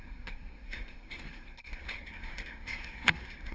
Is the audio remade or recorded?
remade